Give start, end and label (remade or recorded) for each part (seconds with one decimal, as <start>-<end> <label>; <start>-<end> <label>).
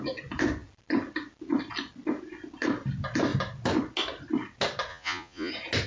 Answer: 0.0-4.9 recorded; 4.9-5.5 remade; 5.5-5.9 recorded